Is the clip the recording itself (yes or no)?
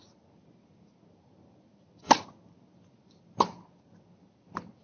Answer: yes